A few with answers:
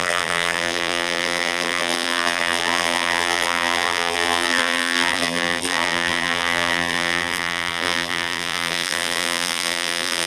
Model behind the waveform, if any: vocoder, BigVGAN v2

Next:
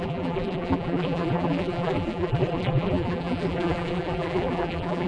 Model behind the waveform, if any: vocoder, BigVGAN v2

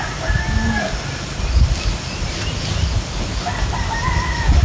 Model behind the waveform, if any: none